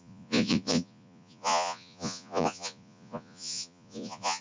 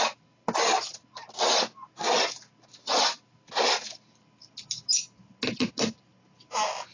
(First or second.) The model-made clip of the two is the first